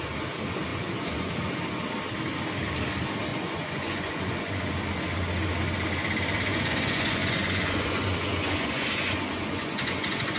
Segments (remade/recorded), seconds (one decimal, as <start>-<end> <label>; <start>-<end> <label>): 0.0-0.7 recorded; 0.7-1.3 remade; 1.3-3.3 recorded; 3.3-4.7 remade; 4.7-6.5 recorded; 6.5-10.4 remade